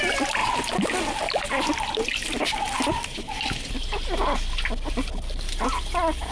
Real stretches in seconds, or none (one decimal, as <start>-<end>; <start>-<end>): 0.0-6.3